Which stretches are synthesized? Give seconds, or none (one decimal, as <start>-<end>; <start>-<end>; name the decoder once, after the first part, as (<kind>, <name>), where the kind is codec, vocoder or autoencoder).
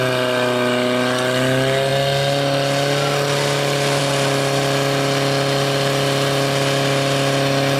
none